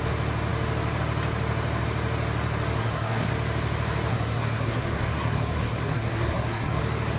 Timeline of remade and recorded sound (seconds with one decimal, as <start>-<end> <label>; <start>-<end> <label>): 0.0-2.8 recorded; 2.8-3.3 remade; 3.3-4.1 recorded; 4.1-6.8 remade; 6.8-7.2 recorded